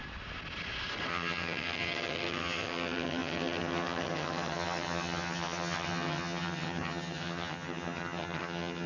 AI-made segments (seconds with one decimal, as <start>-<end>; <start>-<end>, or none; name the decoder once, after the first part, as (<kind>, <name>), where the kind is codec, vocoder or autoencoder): 1.1-8.9 (vocoder, HiFi-GAN)